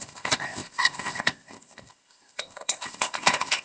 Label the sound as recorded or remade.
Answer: remade